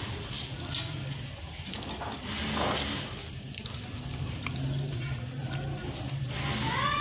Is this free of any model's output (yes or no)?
yes